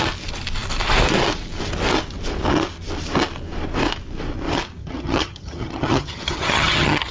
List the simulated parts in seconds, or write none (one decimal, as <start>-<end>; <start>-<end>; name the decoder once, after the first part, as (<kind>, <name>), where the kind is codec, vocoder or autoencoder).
4.8-7.1 (vocoder, HiFi-GAN)